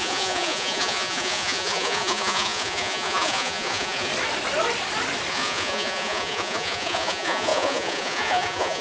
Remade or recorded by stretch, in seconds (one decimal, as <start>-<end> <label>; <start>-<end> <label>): 0.0-4.1 remade; 4.1-5.3 recorded; 5.3-8.8 remade